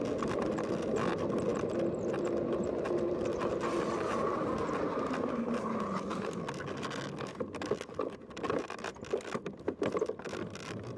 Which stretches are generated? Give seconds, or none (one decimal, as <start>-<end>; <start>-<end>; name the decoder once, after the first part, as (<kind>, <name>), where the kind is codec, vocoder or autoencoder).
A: none